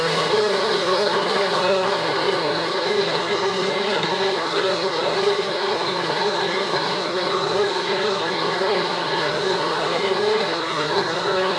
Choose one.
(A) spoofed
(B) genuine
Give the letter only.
A